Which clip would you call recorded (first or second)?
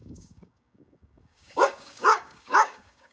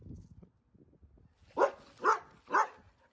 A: second